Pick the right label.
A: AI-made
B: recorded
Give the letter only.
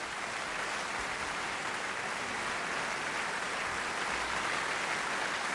B